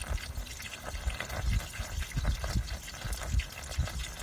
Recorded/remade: recorded